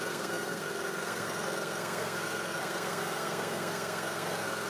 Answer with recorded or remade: remade